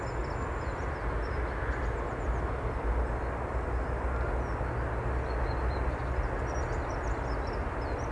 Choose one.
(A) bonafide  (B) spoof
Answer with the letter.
A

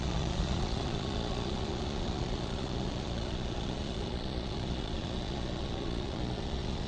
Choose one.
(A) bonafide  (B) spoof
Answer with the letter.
B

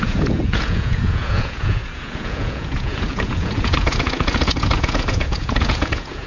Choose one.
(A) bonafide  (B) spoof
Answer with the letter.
B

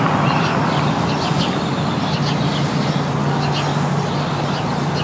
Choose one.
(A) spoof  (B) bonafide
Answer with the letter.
B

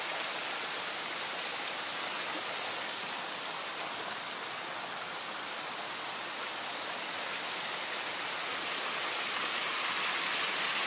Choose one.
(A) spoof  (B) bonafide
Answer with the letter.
B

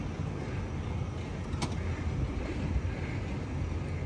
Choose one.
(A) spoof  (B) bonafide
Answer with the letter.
B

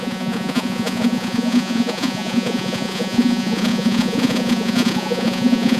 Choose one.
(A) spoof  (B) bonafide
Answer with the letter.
A